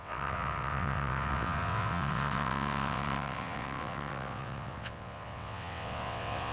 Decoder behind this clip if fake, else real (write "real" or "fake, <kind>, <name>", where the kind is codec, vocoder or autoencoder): fake, vocoder, WaveNeXt